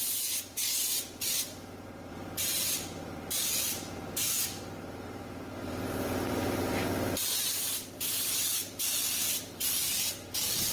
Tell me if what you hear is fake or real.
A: fake